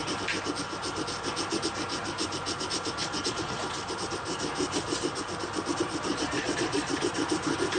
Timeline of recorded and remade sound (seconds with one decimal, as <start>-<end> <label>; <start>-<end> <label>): 0.0-3.0 recorded; 3.0-3.6 remade; 3.6-6.1 recorded; 6.1-6.9 remade; 6.9-7.8 recorded